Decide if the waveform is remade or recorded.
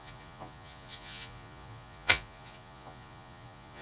remade